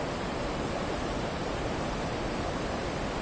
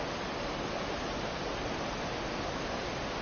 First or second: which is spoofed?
first